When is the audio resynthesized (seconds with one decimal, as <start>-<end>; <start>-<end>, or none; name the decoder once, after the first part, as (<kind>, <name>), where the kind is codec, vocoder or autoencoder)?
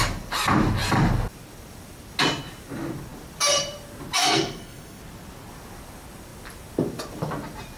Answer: 4.2-5.0 (codec, SNAC)